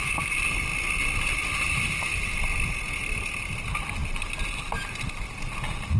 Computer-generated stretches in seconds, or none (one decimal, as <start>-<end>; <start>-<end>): none